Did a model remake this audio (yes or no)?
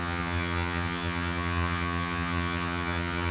yes